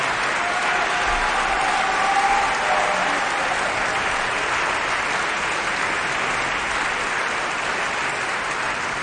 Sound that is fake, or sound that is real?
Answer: real